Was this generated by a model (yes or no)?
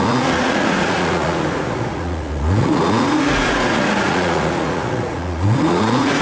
yes